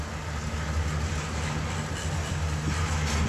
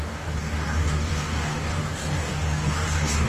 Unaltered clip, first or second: first